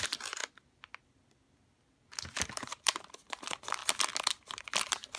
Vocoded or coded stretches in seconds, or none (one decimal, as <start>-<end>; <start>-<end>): 0.0-0.4; 2.5-3.8; 4.6-5.2